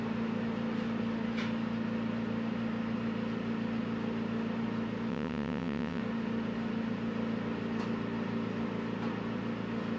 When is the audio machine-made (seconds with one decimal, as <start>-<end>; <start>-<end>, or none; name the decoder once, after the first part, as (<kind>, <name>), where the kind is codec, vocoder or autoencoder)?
5.1-6.0 (vocoder, WaveNeXt)